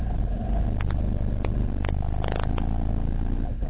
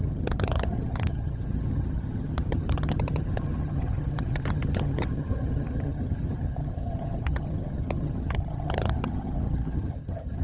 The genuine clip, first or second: first